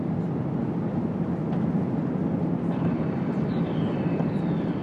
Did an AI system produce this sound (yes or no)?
no